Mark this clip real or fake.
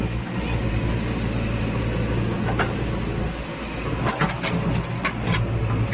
real